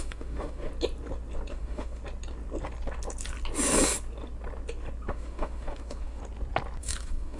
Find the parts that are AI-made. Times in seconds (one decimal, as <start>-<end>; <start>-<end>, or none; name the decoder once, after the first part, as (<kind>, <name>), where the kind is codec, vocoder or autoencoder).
0.0-0.7 (autoencoder, DAC-VAE); 1.5-2.0; 5.1-6.2; 6.8-7.4